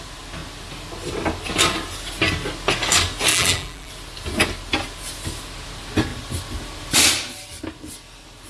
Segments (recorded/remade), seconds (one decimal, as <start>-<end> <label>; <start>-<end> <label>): 0.0-3.3 recorded; 3.3-3.9 remade; 3.9-8.5 recorded